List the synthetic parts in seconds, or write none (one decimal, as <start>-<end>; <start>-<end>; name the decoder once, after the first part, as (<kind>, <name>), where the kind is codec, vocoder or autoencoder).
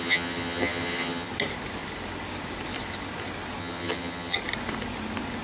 0.0-1.3 (vocoder, HiFi-GAN); 3.6-4.4